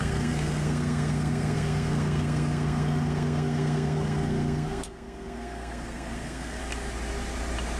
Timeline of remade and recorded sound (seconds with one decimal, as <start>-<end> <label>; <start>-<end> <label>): 0.0-6.6 remade; 6.6-7.8 recorded